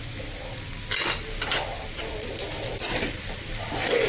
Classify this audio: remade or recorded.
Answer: recorded